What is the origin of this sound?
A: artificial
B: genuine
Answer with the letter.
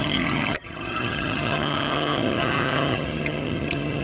A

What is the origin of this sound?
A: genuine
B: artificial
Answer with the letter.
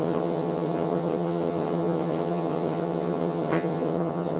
B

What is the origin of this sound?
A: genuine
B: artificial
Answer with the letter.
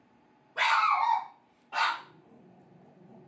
A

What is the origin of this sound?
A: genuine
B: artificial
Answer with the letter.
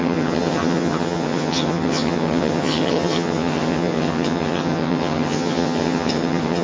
B